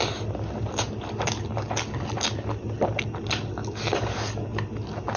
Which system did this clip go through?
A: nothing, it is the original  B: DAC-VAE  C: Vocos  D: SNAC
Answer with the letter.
A